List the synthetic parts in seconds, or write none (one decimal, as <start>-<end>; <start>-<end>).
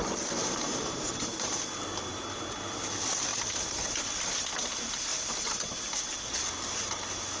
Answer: 0.4-1.6; 3.3-4.0; 5.1-5.9